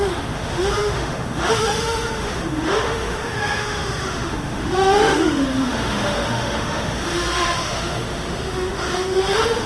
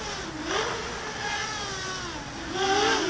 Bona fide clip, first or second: second